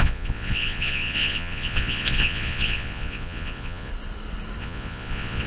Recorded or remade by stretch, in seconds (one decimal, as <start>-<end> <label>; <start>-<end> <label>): 0.0-3.9 remade; 3.9-4.6 recorded; 4.6-5.5 remade